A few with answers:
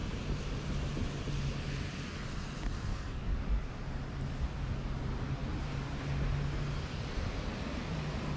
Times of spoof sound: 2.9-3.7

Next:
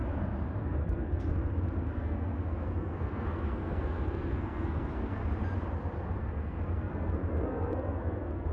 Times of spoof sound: 0.6-5.2; 6.2-8.5

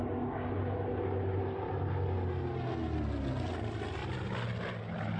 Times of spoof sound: none

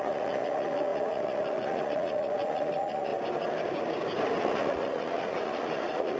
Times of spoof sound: 0.0-3.1; 4.4-6.2

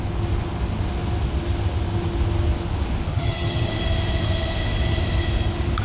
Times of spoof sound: 3.1-3.7

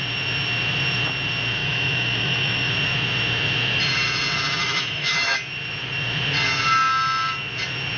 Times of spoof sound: 1.6-2.7; 4.6-5.4

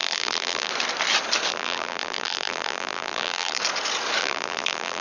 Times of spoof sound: 0.0-0.7; 1.5-3.6; 4.2-5.0